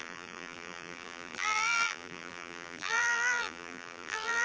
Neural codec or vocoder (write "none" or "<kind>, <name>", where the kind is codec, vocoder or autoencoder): vocoder, BigVGAN v2